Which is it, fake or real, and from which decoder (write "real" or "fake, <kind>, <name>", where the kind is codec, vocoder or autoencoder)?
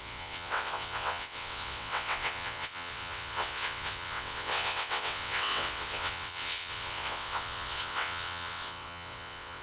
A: fake, vocoder, WaveNeXt